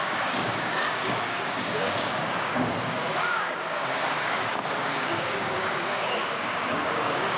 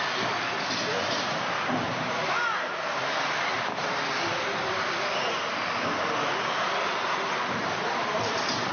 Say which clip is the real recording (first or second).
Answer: second